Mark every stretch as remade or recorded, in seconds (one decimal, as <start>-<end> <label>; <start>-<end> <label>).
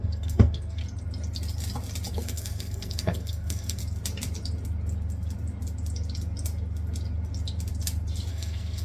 0.0-0.8 remade; 0.8-2.1 recorded; 2.1-3.8 remade; 3.8-8.3 recorded; 8.3-8.8 remade